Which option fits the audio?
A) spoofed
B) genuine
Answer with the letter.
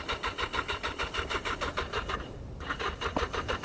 A